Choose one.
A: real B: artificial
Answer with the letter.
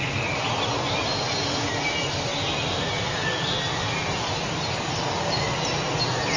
A